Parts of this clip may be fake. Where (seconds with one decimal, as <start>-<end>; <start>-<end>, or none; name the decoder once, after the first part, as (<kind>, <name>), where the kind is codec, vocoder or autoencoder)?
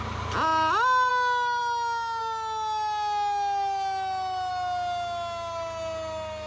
none